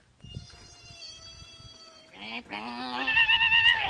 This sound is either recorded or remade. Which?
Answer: recorded